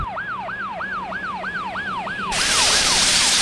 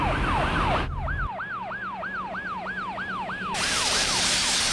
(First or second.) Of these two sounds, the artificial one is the first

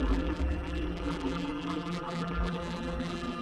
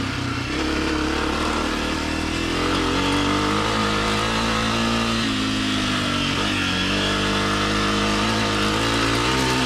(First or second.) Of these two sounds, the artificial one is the first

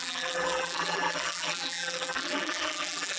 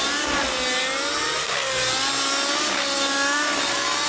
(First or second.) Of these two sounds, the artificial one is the first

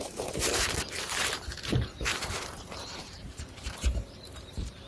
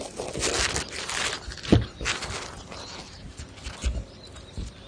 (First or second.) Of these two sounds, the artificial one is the first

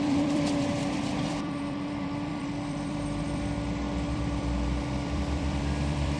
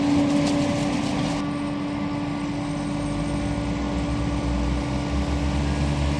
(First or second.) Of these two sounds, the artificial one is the first